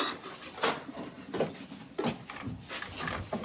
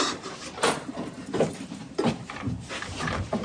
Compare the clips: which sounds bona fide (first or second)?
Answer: first